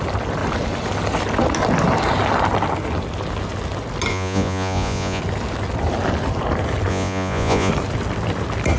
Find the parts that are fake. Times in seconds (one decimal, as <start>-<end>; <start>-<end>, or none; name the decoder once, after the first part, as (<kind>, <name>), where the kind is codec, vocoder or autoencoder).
4.1-5.2 (vocoder, Vocos); 6.9-7.7